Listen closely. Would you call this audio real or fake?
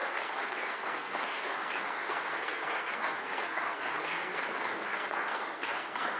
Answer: fake